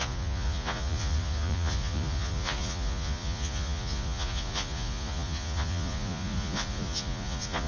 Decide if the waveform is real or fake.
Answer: fake